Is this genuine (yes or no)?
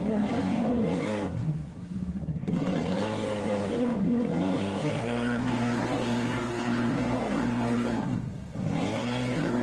no